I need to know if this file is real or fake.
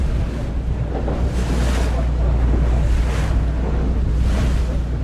real